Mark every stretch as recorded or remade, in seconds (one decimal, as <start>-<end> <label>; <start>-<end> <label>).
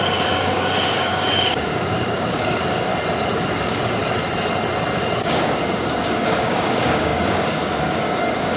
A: 0.0-2.9 remade; 2.9-3.4 recorded; 3.4-4.0 remade; 4.0-5.2 recorded; 5.2-8.6 remade